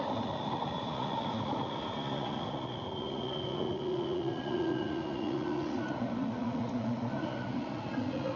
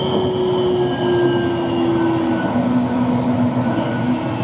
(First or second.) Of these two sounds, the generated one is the first